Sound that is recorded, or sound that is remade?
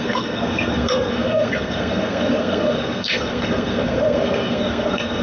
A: remade